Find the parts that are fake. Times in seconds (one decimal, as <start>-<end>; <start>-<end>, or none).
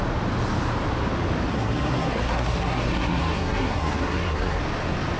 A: 1.5-4.6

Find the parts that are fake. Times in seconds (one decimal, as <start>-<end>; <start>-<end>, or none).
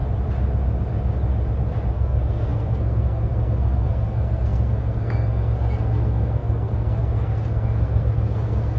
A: 1.9-8.8